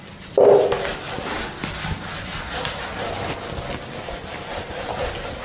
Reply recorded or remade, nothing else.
recorded